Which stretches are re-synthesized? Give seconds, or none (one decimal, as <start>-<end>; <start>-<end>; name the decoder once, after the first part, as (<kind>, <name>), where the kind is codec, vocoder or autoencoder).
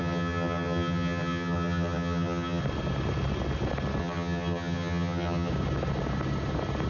0.0-2.6 (vocoder, HiFi-GAN); 4.0-5.5